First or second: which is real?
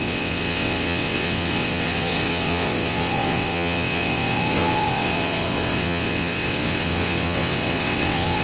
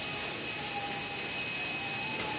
second